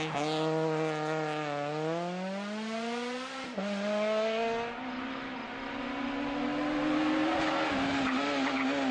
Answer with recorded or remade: recorded